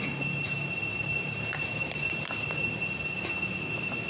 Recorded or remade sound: recorded